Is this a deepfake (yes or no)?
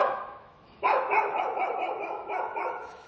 yes